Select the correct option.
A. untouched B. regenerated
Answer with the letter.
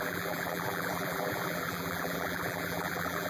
B